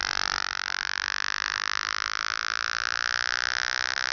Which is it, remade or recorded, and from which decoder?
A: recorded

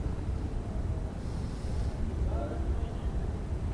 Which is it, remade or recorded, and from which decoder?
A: remade, vocoder, BigVGAN v2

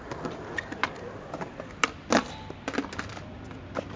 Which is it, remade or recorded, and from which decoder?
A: recorded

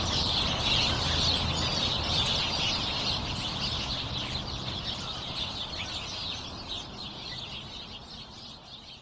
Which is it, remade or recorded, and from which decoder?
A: recorded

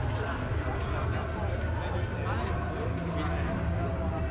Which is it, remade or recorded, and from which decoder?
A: recorded